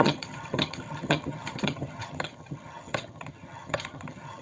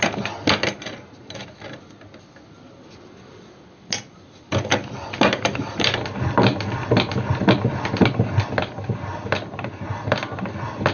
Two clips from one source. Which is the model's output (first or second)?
first